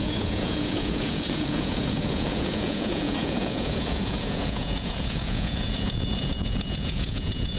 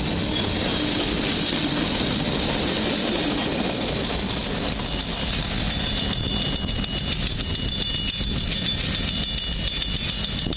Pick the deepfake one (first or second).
first